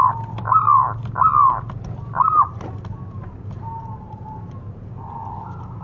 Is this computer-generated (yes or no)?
no